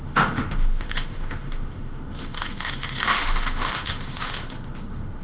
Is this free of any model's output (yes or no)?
no